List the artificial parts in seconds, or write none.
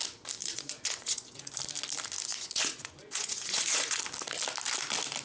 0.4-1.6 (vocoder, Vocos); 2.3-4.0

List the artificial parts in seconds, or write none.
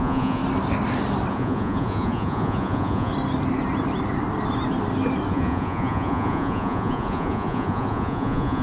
0.0-0.4 (vocoder, Vocos); 1.3-3.1; 5.3-8.6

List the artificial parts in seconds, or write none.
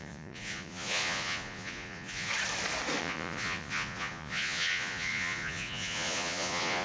0.0-2.3 (vocoder, Vocos); 3.0-6.8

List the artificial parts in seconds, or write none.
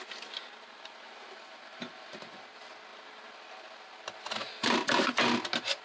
none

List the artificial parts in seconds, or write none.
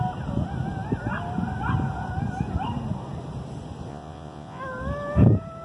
3.9-4.6 (vocoder, Vocos)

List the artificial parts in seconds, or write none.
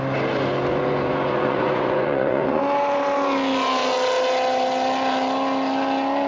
0.7-2.6 (vocoder, Vocos)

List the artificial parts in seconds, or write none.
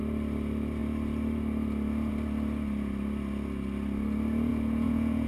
4.5-5.3 (vocoder, Vocos)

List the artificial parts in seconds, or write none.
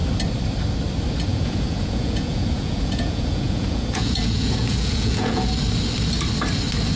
1.3-5.5 (vocoder, Vocos)